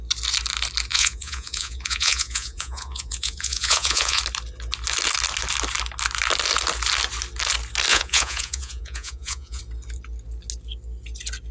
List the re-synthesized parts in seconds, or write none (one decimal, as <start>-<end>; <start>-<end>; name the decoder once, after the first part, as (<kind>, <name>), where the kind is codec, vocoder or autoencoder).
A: 0.9-4.2 (vocoder, Vocos); 7.9-9.6

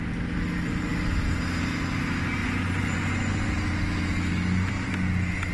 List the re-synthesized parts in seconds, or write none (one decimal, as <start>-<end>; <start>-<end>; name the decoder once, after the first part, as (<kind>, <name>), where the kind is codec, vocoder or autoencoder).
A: 2.4-3.5 (vocoder, Vocos)